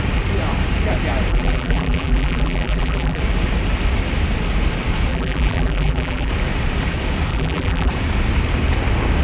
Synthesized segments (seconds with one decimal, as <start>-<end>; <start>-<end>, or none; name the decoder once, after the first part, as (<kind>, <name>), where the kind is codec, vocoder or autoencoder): 1.3-3.2 (vocoder, BigVGAN v2); 5.1-6.3; 7.3-7.9